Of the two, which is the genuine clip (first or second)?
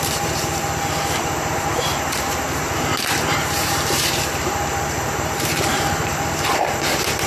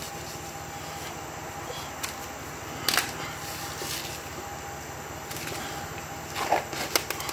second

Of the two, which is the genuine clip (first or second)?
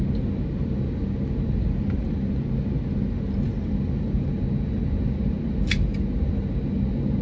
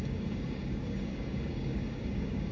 first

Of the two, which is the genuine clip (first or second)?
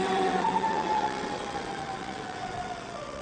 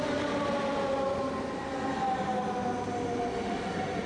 second